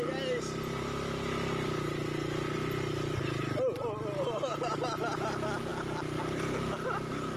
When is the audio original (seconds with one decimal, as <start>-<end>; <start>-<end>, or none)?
0.0-7.4